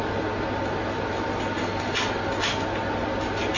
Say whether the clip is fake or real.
real